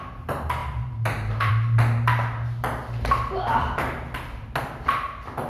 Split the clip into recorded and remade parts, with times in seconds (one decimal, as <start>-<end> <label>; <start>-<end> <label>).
0.0-5.5 recorded

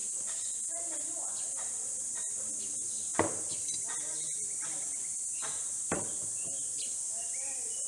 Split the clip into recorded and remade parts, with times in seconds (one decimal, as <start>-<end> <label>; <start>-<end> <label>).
0.0-0.7 recorded; 0.7-7.9 remade

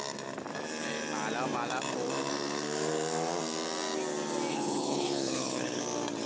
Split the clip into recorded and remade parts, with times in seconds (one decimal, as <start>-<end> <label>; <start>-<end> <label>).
0.0-4.5 recorded; 4.5-5.8 remade; 5.8-6.3 recorded